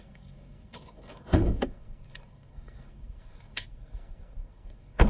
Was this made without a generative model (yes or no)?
no